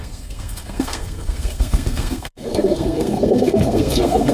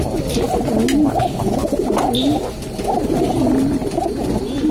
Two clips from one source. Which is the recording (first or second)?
second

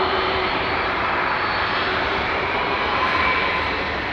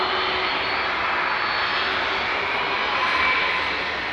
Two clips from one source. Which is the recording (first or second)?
second